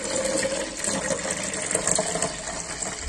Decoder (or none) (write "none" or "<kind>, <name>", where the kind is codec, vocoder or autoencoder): none